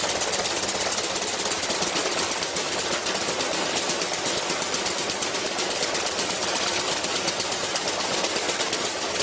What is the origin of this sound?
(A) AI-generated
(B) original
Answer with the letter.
B